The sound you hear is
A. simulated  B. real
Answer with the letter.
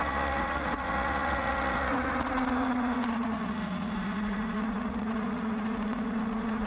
A